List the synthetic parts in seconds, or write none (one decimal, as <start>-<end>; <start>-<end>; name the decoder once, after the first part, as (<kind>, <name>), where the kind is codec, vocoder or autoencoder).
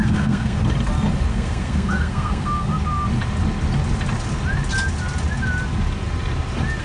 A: 0.0-0.6 (codec, SNAC); 1.3-2.7